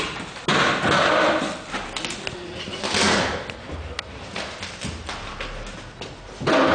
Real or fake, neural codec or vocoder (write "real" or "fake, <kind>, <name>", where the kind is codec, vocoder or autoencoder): real